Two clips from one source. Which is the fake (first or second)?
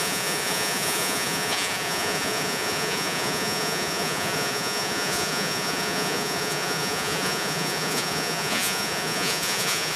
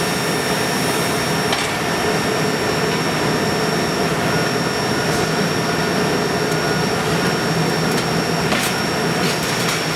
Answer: first